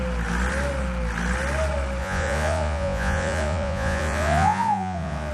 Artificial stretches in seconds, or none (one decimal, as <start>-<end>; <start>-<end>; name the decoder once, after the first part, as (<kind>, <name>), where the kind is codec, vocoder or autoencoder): 2.0-5.3 (vocoder, Vocos)